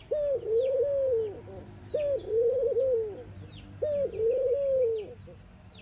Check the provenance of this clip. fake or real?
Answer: real